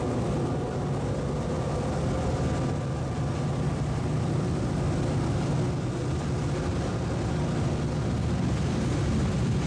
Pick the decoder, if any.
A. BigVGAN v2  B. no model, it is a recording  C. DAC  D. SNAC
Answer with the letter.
B